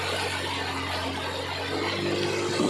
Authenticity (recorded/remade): recorded